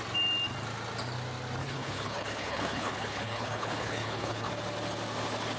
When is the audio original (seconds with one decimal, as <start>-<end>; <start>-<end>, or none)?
0.0-1.6; 4.5-5.6